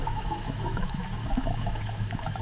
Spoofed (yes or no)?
yes